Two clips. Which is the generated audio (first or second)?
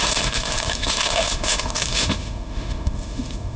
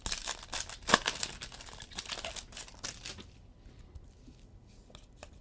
first